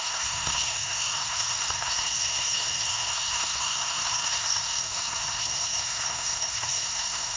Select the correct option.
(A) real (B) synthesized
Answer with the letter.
B